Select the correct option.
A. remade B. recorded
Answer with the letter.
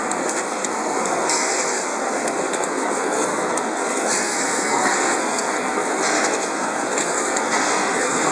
A